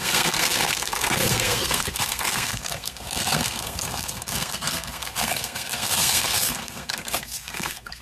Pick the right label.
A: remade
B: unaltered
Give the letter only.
A